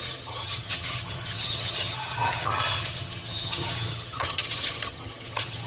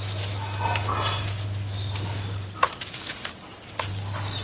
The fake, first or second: first